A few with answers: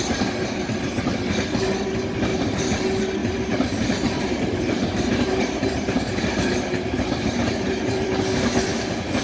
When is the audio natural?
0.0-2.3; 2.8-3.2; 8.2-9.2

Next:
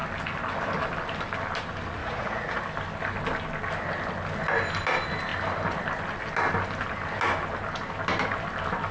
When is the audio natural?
0.0-2.0; 2.6-8.9